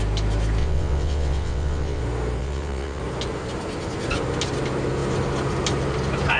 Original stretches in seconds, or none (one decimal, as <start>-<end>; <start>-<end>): 0.0-0.6; 2.0-2.4; 3.0-6.4